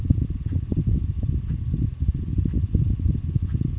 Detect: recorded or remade recorded